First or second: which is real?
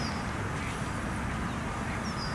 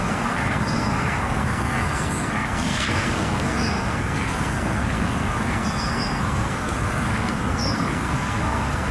first